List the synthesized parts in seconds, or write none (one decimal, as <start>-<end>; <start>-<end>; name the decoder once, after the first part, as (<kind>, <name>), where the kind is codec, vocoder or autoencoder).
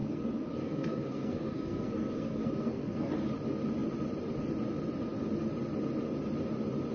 0.0-3.1 (codec, SNAC)